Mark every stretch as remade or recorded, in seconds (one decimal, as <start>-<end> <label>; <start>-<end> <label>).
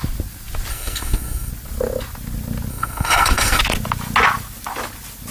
0.0-0.7 recorded; 0.7-1.5 remade; 1.5-2.7 recorded; 2.7-3.6 remade; 3.6-5.3 recorded